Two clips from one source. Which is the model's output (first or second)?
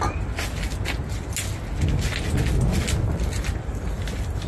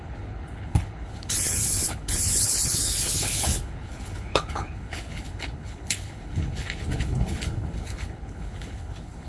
second